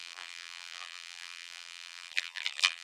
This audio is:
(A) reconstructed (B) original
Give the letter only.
A